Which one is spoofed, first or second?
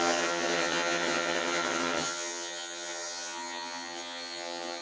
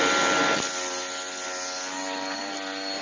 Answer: first